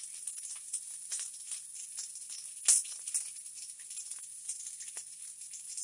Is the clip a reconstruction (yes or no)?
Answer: no